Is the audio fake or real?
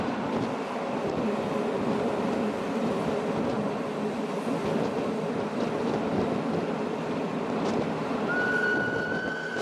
real